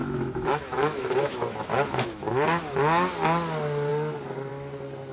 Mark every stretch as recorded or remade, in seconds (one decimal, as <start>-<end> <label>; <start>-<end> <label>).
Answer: 0.0-2.6 remade; 2.6-5.1 recorded